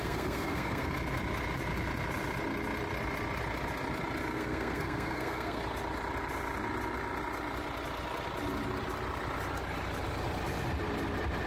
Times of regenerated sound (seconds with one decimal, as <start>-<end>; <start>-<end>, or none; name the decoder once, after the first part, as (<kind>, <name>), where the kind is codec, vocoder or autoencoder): 0.0-0.9 (codec, SNAC); 4.3-5.6

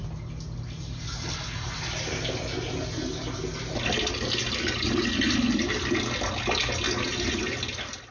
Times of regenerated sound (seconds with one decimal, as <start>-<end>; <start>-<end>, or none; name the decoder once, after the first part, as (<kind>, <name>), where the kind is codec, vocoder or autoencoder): none